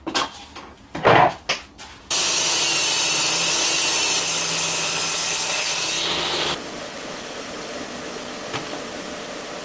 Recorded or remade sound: recorded